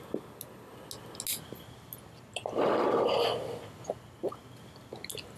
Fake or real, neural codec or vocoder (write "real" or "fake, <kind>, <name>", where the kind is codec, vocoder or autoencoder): real